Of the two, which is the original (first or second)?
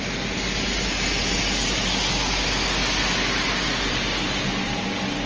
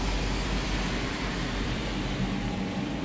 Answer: first